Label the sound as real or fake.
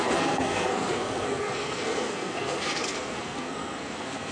fake